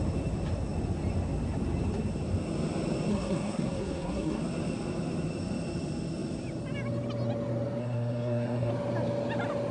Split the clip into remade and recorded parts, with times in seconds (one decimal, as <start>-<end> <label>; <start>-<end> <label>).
0.0-3.1 recorded; 3.1-4.4 remade; 4.4-7.8 recorded; 7.8-8.7 remade; 8.7-9.7 recorded